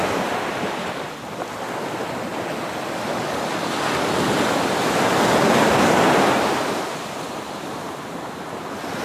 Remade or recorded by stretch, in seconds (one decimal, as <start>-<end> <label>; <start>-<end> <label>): 0.0-9.0 recorded